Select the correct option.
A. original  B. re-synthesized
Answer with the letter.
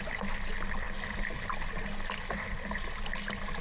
A